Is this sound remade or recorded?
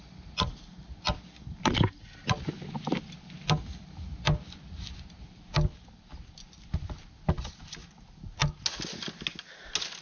recorded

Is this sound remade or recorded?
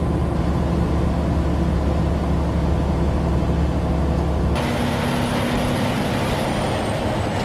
recorded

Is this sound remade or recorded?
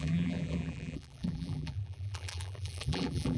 remade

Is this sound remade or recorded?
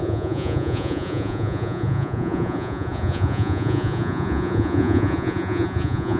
remade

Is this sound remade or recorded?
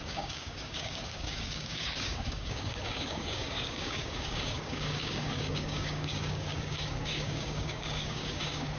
remade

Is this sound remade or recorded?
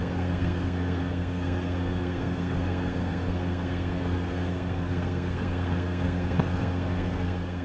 remade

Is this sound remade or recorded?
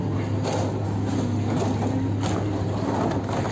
recorded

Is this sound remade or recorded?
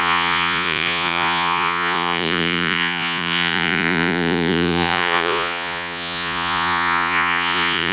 remade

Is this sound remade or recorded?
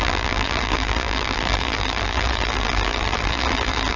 remade